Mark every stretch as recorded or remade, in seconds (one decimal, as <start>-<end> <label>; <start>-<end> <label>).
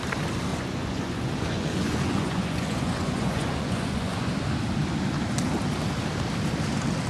0.0-0.5 recorded; 0.5-4.3 remade; 4.3-7.1 recorded